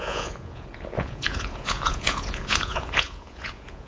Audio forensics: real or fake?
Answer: fake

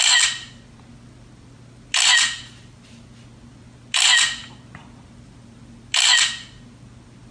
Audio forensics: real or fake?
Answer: real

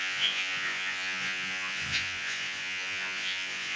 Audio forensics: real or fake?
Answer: fake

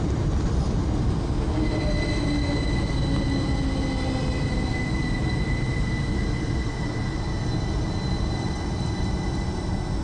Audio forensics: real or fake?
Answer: real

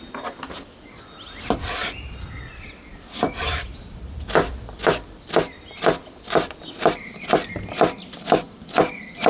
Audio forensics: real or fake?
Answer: real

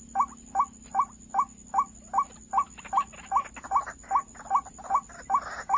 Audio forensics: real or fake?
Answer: real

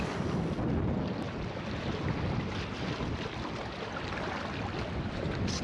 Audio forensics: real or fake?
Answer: real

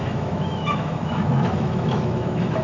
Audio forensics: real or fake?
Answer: fake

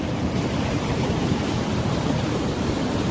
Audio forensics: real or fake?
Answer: fake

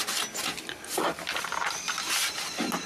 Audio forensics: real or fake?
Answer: real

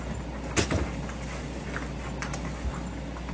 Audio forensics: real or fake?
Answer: real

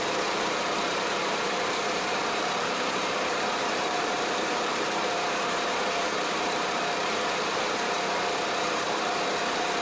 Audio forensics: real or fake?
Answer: fake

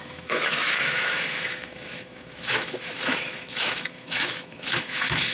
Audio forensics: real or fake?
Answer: fake